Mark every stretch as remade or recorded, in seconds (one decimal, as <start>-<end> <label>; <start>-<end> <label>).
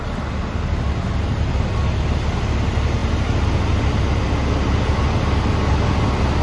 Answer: 0.0-6.4 recorded